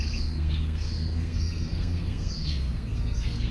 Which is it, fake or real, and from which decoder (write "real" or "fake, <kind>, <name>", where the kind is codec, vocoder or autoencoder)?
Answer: fake, codec, SNAC